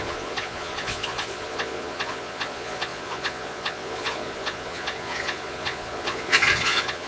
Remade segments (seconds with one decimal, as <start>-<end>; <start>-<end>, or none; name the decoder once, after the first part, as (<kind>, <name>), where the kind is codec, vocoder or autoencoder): 0.0-7.1 (vocoder, Vocos)